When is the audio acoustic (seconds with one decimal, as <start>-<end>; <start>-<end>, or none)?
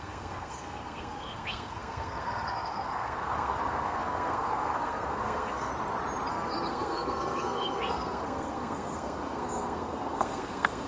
5.7-6.3